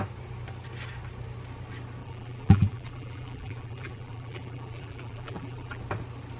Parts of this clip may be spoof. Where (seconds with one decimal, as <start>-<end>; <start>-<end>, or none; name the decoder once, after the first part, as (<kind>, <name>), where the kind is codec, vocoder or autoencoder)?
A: 2.0-5.8 (vocoder, BigVGAN v2)